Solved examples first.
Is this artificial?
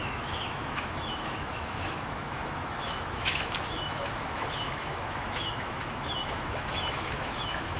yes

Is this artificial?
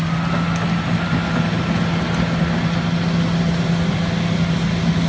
no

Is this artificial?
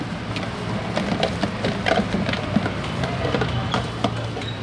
no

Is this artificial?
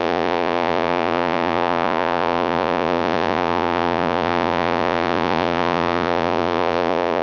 yes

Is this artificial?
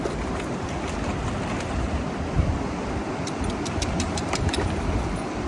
no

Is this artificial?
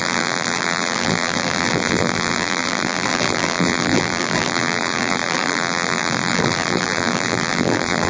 yes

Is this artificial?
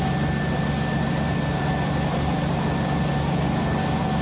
no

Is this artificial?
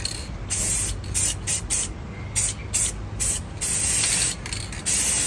no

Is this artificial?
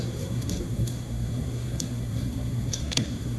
yes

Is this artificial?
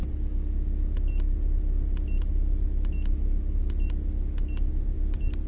no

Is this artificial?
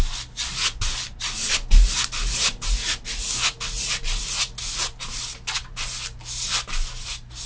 no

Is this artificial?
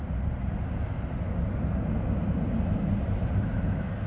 no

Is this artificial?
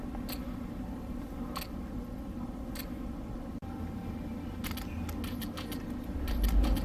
no